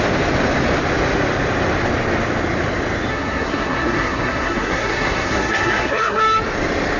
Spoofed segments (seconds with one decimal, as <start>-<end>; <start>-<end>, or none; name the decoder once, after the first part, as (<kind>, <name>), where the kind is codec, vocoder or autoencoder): 3.1-6.2 (codec, SNAC)